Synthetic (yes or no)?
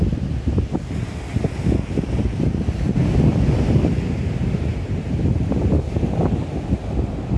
no